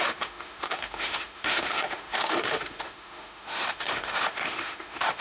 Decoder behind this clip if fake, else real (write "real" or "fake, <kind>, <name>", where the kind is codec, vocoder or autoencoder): fake, autoencoder, DAC-VAE